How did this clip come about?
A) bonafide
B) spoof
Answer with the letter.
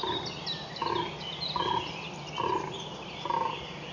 A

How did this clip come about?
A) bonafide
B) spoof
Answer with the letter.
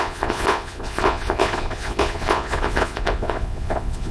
B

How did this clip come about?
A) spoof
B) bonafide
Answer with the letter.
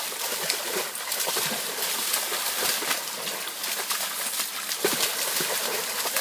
B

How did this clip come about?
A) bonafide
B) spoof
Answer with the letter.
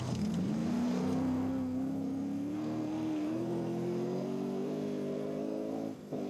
B